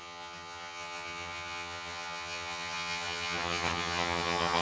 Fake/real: fake